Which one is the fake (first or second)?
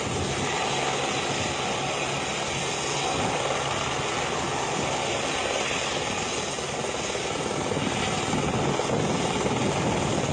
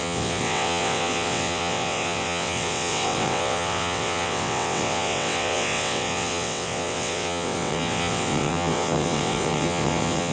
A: second